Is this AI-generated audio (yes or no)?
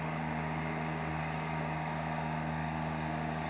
yes